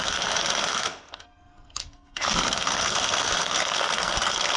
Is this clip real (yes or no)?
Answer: no